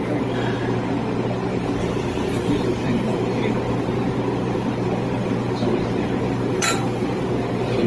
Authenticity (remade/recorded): remade